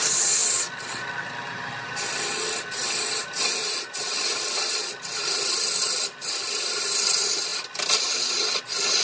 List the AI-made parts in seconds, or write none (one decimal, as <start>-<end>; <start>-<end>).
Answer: none